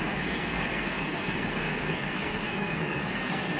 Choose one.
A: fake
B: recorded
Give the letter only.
A